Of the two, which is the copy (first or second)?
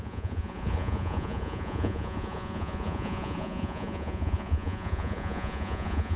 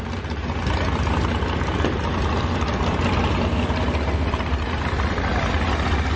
first